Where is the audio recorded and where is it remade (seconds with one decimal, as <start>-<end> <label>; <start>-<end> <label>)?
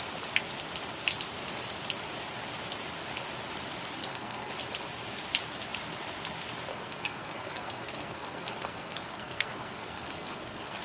0.0-4.0 recorded; 4.0-4.5 remade; 4.5-6.7 recorded; 6.7-10.8 remade